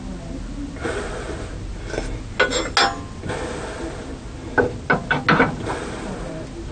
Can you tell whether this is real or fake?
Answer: real